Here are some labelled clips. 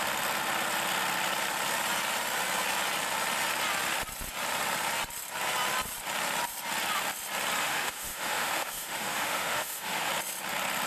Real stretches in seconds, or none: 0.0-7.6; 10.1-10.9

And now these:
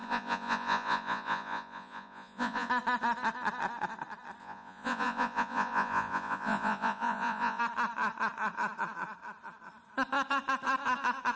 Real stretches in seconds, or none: 2.7-4.4; 7.6-11.4

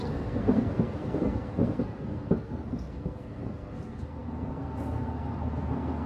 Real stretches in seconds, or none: none

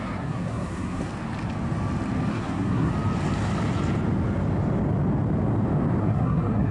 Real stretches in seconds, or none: 1.1-2.3; 2.9-6.0

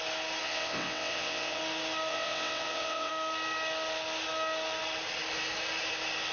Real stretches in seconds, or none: 0.0-0.4; 1.6-2.1; 3.1-6.3

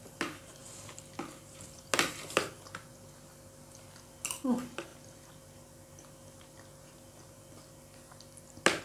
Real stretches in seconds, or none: 0.0-8.8